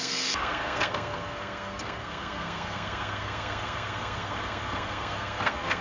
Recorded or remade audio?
remade